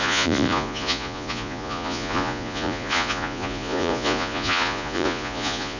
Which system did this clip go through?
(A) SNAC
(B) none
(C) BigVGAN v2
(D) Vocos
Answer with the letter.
D